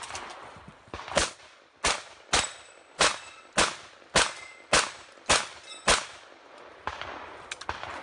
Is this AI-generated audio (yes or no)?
no